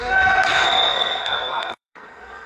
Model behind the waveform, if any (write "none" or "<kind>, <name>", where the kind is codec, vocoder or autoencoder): codec, SNAC